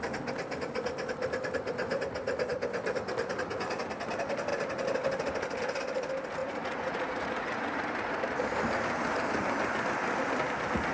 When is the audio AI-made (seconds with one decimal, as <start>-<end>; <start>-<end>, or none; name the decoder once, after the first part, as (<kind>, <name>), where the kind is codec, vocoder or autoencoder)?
6.4-8.2 (vocoder, Vocos)

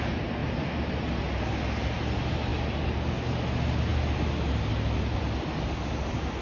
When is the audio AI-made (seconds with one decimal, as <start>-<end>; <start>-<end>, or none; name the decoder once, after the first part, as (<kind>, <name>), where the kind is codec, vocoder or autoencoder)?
none

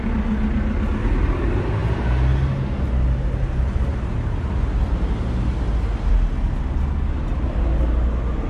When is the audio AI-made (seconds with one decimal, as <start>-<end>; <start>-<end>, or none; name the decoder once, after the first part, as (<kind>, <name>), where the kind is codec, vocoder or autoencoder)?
none

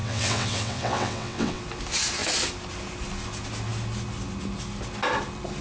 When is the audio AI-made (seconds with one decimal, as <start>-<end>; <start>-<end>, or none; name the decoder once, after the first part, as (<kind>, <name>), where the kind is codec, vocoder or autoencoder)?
0.0-1.6 (vocoder, WaveNeXt)

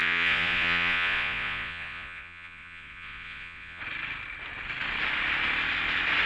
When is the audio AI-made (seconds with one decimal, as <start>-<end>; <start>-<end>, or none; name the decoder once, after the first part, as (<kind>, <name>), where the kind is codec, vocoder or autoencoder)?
0.0-3.8 (vocoder, Vocos)

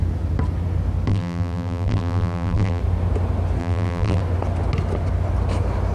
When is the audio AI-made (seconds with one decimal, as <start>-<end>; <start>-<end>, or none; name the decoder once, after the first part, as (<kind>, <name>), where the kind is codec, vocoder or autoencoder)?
1.1-2.8 (vocoder, BigVGAN v2); 3.6-4.2